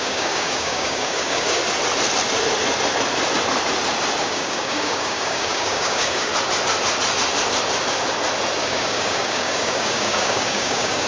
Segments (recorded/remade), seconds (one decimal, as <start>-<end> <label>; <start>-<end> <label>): 0.0-1.6 remade; 1.6-4.2 recorded; 4.2-6.3 remade; 6.3-8.6 recorded; 8.6-11.1 remade